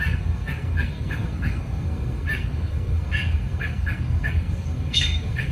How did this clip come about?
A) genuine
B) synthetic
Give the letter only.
B